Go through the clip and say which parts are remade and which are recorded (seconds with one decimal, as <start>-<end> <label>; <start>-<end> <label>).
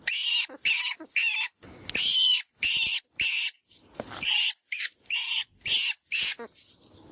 0.0-7.1 recorded